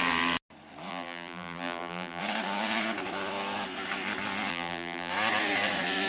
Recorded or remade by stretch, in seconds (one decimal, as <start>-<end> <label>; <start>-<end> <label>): 0.0-0.9 recorded; 0.9-2.2 remade; 2.2-4.5 recorded; 4.5-5.1 remade; 5.1-6.1 recorded